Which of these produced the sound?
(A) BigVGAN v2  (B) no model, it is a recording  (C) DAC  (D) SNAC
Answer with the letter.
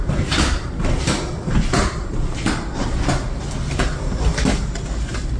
B